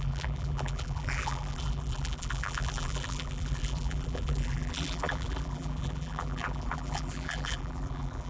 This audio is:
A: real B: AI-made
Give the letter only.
B